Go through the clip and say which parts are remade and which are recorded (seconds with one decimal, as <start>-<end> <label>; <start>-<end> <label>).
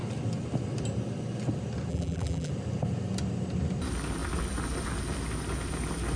0.0-1.9 recorded; 1.9-2.5 remade; 2.5-6.2 recorded